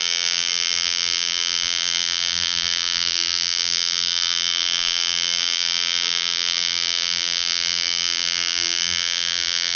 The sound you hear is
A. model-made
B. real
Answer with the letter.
A